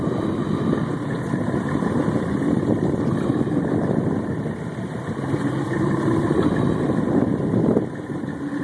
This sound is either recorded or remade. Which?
recorded